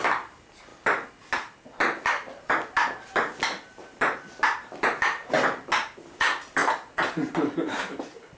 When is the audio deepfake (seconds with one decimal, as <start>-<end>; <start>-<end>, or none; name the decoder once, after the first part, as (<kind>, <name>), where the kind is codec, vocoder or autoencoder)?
none